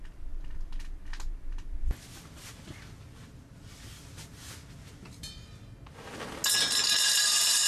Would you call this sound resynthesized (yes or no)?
no